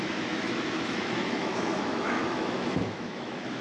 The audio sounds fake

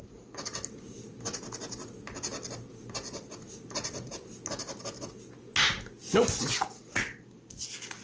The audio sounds real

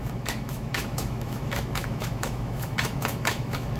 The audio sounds fake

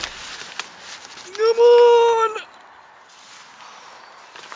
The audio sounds real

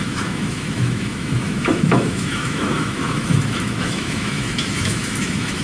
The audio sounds fake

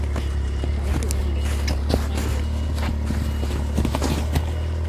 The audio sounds real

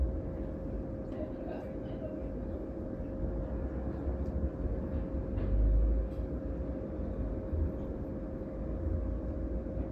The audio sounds real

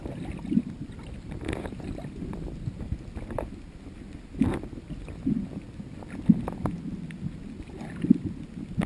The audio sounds real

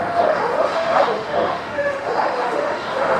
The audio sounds fake